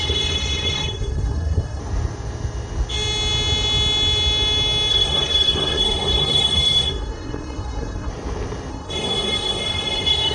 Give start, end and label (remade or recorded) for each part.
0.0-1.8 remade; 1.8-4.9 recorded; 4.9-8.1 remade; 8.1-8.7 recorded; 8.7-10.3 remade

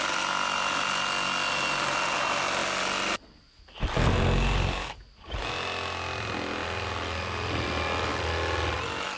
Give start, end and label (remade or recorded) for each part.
0.0-9.2 recorded

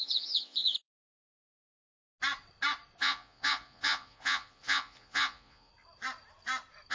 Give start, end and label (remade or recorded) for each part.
0.0-1.6 remade; 1.6-3.0 recorded; 3.0-5.7 remade; 5.7-6.9 recorded

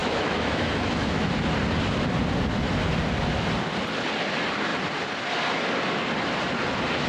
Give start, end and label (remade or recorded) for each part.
0.0-1.3 remade; 1.3-7.1 recorded

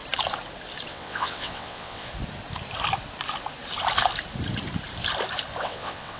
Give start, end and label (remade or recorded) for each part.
0.0-0.9 recorded; 0.9-2.1 remade; 2.1-5.6 recorded; 5.6-6.2 remade

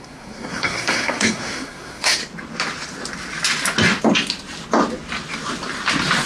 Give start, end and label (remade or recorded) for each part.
0.0-2.2 remade; 2.2-6.3 recorded

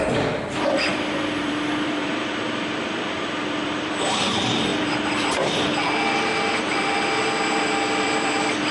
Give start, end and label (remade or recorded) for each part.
0.0-8.7 remade

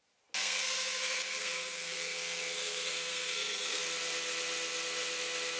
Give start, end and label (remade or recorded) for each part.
0.0-0.4 recorded; 0.4-3.8 remade; 3.8-5.6 recorded